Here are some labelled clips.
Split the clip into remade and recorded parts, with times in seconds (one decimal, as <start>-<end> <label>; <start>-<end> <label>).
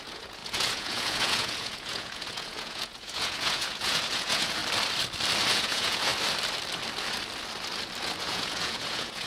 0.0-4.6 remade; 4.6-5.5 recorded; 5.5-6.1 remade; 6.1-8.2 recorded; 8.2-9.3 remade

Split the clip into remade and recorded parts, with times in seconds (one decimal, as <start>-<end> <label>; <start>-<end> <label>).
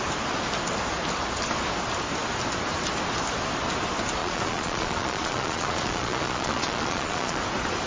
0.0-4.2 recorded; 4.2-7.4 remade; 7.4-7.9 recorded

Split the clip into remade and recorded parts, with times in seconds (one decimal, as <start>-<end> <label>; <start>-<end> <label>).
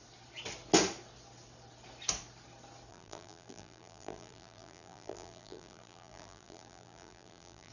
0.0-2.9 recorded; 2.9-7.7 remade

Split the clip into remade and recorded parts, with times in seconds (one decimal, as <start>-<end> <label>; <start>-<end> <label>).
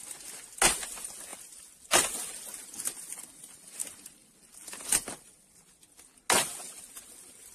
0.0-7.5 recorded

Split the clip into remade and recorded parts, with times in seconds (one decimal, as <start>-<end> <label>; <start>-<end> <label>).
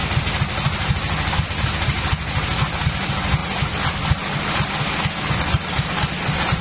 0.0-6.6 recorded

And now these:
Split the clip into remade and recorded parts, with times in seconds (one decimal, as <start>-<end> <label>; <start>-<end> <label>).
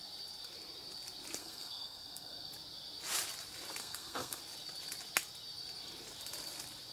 0.0-1.4 recorded; 1.4-2.5 remade; 2.5-3.8 recorded; 3.8-4.4 remade; 4.4-6.9 recorded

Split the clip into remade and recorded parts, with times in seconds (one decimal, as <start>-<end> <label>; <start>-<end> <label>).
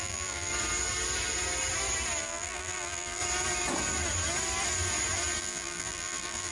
0.0-0.5 remade; 0.5-2.2 recorded; 2.2-3.2 remade; 3.2-5.4 recorded; 5.4-6.5 remade